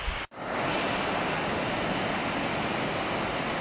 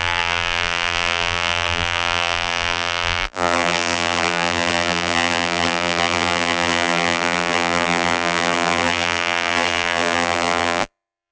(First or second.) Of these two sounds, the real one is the first